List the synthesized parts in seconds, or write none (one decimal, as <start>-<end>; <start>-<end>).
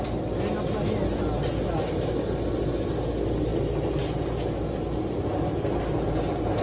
none